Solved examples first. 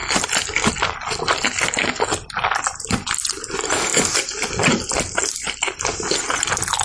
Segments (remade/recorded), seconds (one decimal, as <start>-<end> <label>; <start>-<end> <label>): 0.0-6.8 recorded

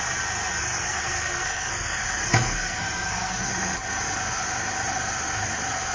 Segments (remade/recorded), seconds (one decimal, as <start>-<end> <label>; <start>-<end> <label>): 0.0-0.6 recorded; 0.6-3.5 remade; 3.5-5.9 recorded

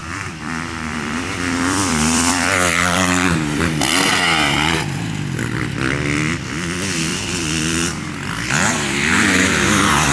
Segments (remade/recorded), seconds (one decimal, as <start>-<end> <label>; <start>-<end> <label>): 0.0-4.1 remade; 4.1-7.1 recorded; 7.1-8.3 remade; 8.3-10.1 recorded

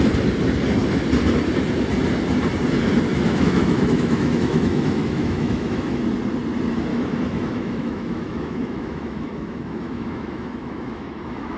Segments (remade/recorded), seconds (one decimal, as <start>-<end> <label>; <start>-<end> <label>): 0.0-3.1 recorded; 3.1-6.0 remade; 6.0-6.9 recorded; 6.9-11.6 remade

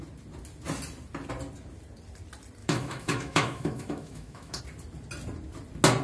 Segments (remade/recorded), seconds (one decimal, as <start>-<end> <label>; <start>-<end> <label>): 0.0-2.6 recorded; 2.6-4.6 remade; 4.6-6.0 recorded

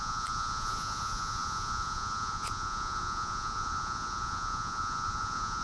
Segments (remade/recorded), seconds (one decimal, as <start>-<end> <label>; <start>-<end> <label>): 0.0-5.6 remade